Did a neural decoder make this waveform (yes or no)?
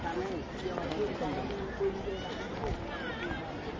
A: no